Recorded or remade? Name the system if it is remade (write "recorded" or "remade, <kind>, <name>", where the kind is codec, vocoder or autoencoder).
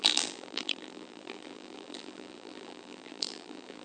remade, vocoder, BigVGAN v2